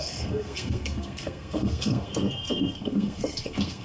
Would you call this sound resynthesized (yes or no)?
yes